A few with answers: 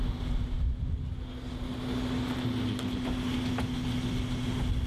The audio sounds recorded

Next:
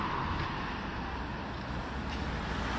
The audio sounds recorded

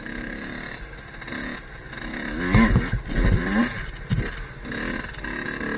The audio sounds recorded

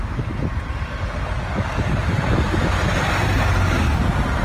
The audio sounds recorded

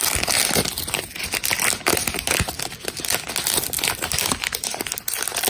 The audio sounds recorded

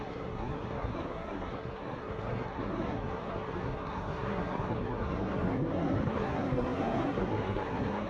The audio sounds remade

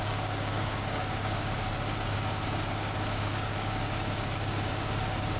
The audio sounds remade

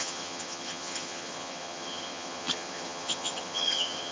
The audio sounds remade